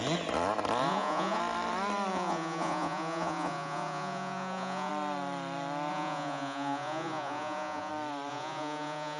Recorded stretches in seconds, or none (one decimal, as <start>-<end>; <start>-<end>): 0.0-0.9; 1.4-2.1; 4.9-5.9; 7.9-8.3